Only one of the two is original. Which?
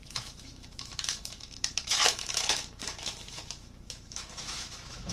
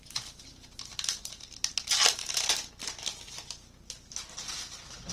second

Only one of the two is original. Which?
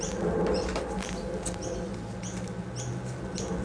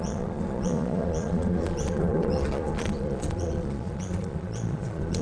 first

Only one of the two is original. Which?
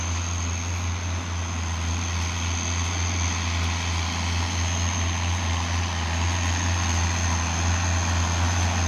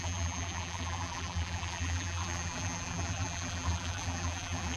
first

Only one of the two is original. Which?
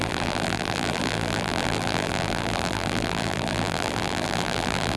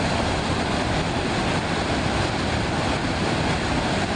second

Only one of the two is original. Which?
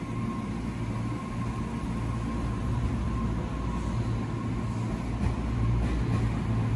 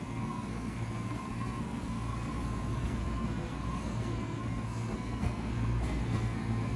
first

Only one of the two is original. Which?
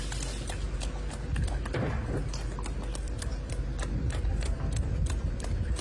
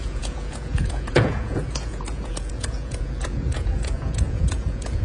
first